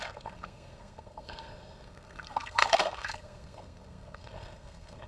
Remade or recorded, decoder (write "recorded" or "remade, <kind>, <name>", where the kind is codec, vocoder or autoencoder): remade, codec, SNAC